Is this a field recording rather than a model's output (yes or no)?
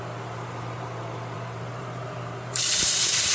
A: no